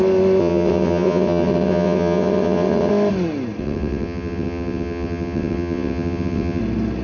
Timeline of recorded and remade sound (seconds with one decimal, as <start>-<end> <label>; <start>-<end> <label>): 0.0-0.4 recorded; 0.4-2.9 remade; 2.9-3.6 recorded; 3.6-6.6 remade; 6.6-7.0 recorded